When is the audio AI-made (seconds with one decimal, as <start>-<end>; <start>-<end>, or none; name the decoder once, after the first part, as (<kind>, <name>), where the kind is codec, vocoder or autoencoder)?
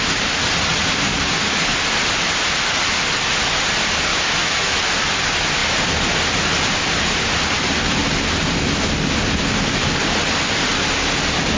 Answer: 4.1-4.8 (autoencoder, DAC-VAE)